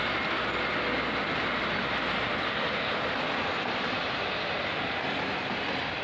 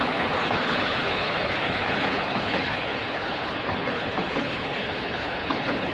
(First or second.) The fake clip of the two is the second